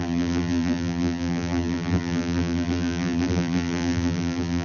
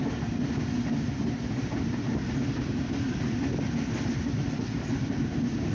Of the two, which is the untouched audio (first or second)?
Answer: second